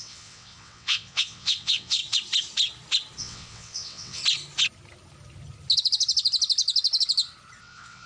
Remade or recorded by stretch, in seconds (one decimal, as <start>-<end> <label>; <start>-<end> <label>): 0.0-2.0 remade; 2.0-3.2 recorded; 3.2-4.2 remade; 4.2-7.6 recorded; 7.6-8.1 remade